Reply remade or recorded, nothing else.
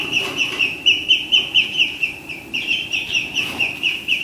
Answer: remade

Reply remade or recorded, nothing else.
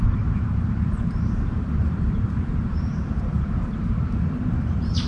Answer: remade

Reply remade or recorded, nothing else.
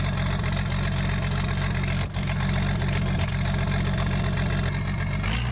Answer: recorded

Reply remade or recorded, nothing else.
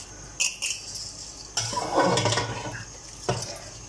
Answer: recorded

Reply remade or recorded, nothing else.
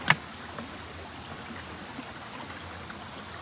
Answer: recorded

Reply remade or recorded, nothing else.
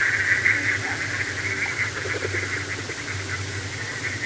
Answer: recorded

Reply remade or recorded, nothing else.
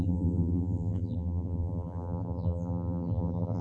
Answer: remade